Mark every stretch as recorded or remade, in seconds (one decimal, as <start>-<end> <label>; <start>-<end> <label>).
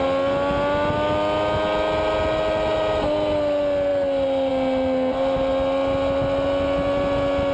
0.0-7.5 recorded